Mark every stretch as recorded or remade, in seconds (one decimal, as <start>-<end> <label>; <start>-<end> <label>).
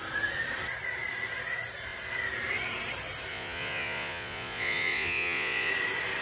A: 0.0-3.3 recorded; 3.3-5.7 remade; 5.7-6.2 recorded